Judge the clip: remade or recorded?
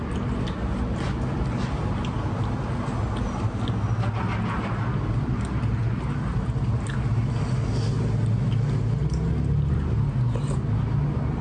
recorded